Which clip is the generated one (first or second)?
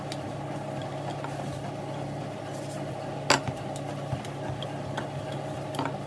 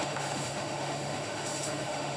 second